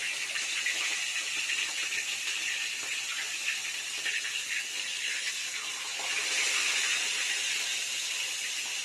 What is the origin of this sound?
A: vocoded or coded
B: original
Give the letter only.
B